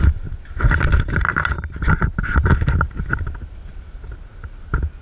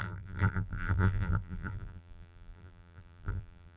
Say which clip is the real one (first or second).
first